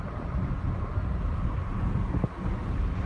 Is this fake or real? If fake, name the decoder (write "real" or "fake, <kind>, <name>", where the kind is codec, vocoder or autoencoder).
real